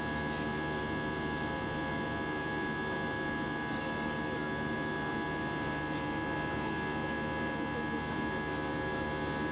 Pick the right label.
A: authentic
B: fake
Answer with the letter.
A